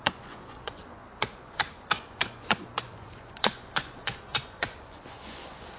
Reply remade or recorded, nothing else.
remade